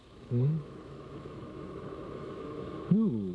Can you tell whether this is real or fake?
fake